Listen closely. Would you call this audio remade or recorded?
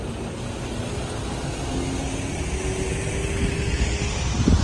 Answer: recorded